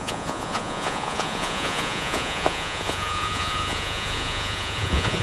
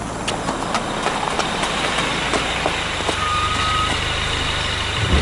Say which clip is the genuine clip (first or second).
second